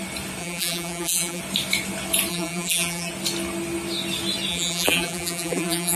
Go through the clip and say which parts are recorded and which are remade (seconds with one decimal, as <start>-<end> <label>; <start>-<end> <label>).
0.0-0.4 recorded; 0.4-1.4 remade; 1.4-2.3 recorded; 2.3-3.1 remade; 3.1-4.5 recorded; 4.5-6.0 remade